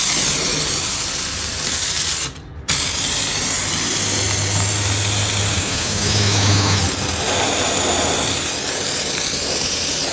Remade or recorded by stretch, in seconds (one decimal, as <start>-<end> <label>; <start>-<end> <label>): 0.0-5.5 recorded; 5.5-6.8 remade; 6.8-10.1 recorded